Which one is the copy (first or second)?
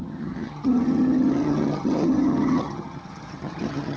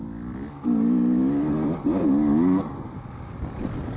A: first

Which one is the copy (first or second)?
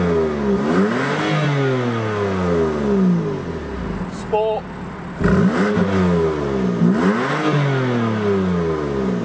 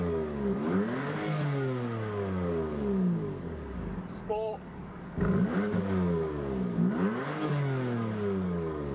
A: second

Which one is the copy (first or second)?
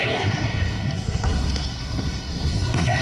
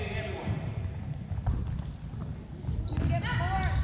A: first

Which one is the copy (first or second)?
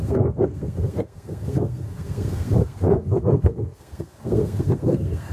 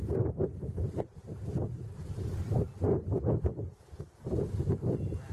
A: first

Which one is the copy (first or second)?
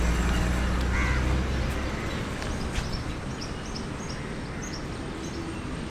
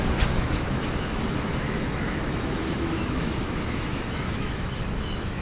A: second